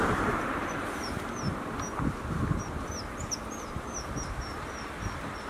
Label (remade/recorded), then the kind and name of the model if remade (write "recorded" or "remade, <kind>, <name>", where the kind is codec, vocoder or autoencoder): remade, vocoder, BigVGAN v2